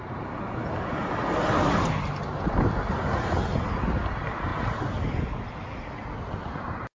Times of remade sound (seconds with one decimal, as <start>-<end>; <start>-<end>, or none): none